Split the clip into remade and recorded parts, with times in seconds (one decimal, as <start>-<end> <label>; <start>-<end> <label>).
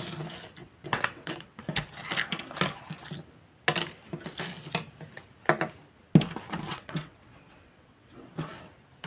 0.0-0.6 recorded; 0.6-1.6 remade; 1.6-6.7 recorded; 6.7-8.5 remade; 8.5-9.1 recorded